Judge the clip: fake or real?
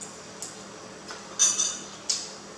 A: real